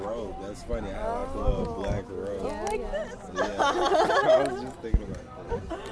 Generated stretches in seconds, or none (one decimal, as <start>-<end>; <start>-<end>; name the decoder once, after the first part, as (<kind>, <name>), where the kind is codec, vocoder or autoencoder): none